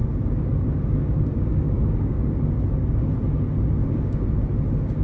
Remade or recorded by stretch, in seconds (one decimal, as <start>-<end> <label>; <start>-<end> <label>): 0.0-3.0 remade; 3.0-3.8 recorded; 3.8-4.3 remade; 4.3-5.0 recorded